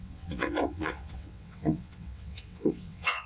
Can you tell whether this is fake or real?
fake